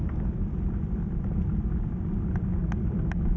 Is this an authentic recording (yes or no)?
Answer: yes